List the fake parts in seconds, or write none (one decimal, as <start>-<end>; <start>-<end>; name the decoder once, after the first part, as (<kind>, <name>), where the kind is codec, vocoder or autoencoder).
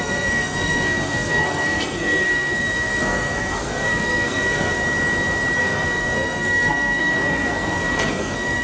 0.0-4.8 (codec, SNAC); 5.6-8.6